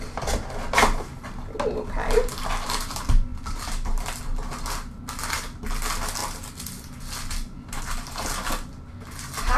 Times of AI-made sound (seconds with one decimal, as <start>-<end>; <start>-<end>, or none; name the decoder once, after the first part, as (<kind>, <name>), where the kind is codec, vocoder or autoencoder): 3.3-4.2 (vocoder, BigVGAN v2)